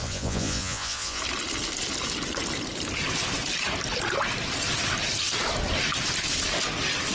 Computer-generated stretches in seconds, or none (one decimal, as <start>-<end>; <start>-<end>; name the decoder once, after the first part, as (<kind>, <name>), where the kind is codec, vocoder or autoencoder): 0.0-1.2 (vocoder, Vocos)